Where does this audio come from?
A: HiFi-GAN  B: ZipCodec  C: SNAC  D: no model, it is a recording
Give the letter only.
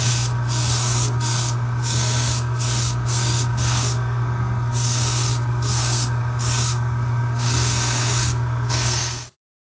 C